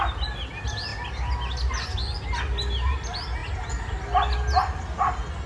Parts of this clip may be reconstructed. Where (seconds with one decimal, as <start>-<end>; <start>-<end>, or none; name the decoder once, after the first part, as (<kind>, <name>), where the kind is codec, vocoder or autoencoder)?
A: none